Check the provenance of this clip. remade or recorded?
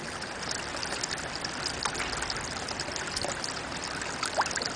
recorded